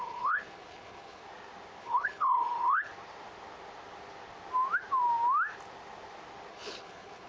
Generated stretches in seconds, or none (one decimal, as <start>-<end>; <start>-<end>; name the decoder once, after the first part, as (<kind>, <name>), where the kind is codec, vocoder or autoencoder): 0.0-1.2 (codec, HILCodec); 1.8-2.9; 6.5-7.3